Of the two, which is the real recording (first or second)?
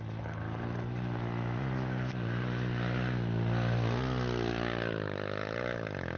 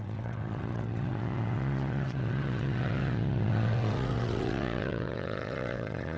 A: first